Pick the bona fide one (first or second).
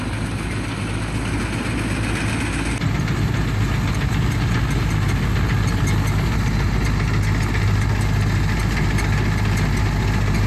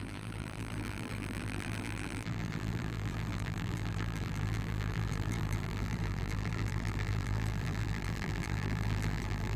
first